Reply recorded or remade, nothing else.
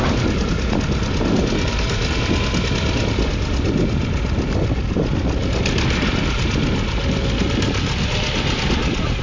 recorded